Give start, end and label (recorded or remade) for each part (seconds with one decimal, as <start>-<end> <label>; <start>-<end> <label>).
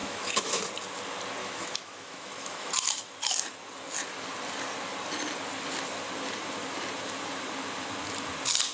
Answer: 0.0-0.6 remade; 0.6-1.4 recorded; 1.4-2.7 remade; 2.7-8.7 recorded